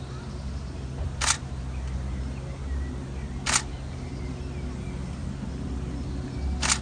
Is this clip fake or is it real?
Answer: real